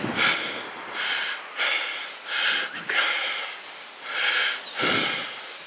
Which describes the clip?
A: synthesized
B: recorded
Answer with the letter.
B